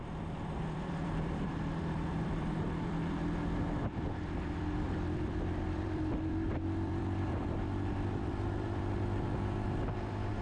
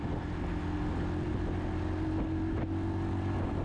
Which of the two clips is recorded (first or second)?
second